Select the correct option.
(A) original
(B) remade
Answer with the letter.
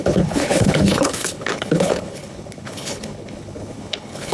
B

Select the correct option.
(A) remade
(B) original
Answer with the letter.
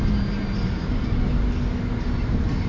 B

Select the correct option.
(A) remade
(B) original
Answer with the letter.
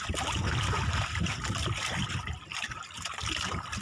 B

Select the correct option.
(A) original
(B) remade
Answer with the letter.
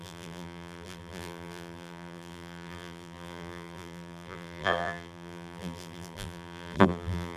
B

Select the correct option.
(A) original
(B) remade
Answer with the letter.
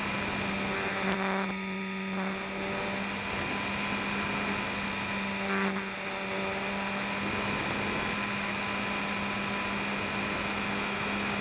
A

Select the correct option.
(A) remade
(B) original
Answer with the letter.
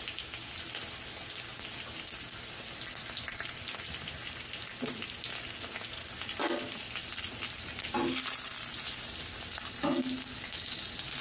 B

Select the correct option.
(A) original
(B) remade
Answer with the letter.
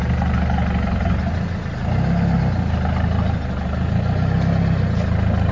A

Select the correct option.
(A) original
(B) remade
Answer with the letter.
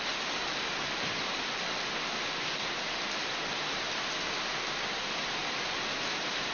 A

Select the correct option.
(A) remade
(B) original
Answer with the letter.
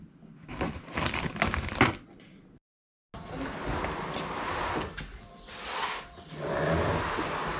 B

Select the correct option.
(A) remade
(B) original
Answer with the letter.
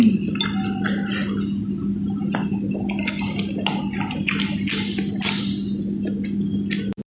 B